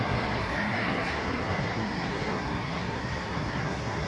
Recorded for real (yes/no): no